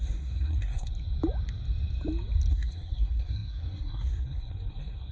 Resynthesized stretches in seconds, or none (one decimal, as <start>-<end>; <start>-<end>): 0.0-0.9; 2.5-5.1